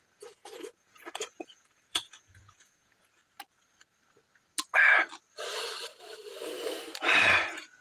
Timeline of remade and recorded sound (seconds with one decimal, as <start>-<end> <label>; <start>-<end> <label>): 0.0-3.2 remade; 3.2-7.2 recorded; 7.2-7.8 remade